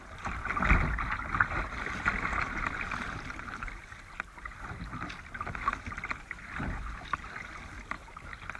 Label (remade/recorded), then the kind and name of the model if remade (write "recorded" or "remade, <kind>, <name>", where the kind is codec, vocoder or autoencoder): recorded